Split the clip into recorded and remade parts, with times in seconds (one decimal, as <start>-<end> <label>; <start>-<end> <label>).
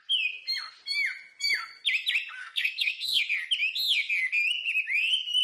0.0-2.4 recorded; 2.4-3.2 remade; 3.2-5.4 recorded